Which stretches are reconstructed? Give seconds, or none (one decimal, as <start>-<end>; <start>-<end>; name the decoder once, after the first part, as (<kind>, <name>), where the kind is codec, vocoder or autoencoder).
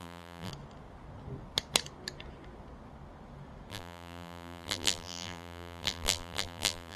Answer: 0.0-0.5 (vocoder, BigVGAN v2); 3.7-7.0